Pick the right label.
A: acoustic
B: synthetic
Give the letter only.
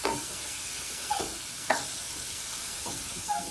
B